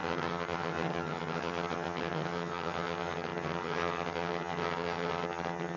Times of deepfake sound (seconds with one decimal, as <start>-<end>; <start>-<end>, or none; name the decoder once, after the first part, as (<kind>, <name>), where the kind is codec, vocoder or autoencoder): 0.0-5.8 (vocoder, HiFi-GAN)